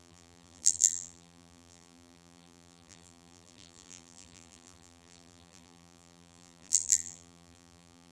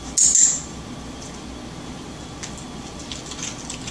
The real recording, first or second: second